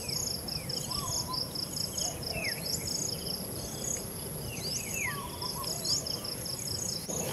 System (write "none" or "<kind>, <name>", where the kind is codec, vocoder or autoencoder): none